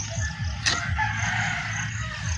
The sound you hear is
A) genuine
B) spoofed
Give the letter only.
A